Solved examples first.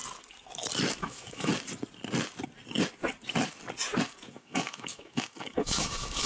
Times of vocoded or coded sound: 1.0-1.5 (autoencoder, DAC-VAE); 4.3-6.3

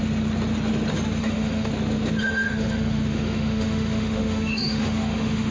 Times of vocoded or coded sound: 1.2-1.7 (autoencoder, DAC-VAE); 2.2-5.5

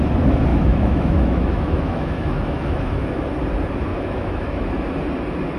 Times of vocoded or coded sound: 0.5-3.2 (autoencoder, DAC-VAE); 3.9-4.6